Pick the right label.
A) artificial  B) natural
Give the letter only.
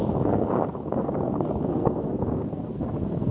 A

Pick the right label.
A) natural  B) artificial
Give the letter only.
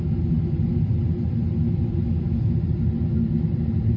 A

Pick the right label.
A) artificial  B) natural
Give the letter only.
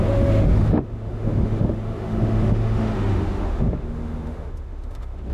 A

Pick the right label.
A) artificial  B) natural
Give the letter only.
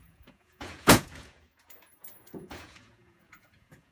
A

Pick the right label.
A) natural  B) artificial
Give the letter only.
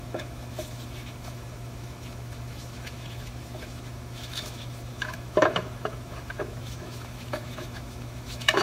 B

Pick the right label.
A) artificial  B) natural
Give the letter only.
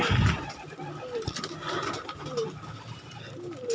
B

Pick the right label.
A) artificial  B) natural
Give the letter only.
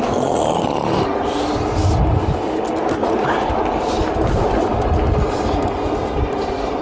B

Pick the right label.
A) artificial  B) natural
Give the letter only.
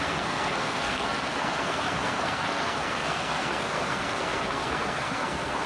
A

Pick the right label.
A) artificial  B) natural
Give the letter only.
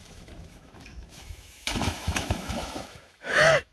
A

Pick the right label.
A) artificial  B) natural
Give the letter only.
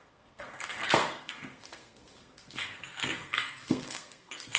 A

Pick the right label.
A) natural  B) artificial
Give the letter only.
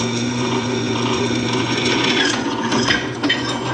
B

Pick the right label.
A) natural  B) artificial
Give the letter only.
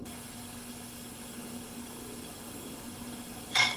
B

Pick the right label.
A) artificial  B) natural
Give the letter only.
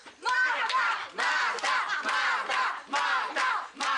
B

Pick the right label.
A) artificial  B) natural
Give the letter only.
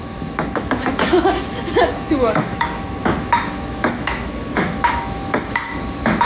A